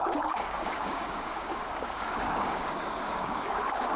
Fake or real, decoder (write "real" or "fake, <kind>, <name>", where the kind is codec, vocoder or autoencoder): fake, codec, DAC